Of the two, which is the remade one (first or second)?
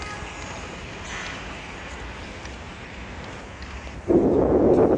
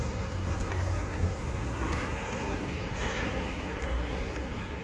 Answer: second